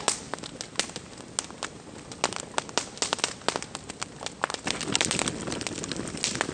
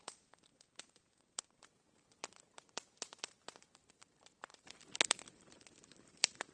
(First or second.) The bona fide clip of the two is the first